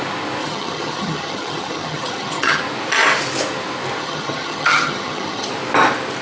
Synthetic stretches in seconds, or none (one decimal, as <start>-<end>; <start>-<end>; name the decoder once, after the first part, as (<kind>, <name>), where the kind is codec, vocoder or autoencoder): 0.4-2.6 (vocoder, HiFi-GAN); 4.0-5.5